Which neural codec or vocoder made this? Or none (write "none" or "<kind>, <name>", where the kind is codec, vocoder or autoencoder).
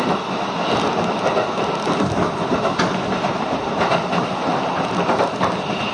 none